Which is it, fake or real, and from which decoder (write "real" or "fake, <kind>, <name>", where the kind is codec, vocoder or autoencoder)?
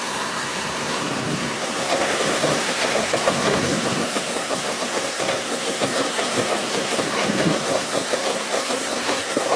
fake, codec, SNAC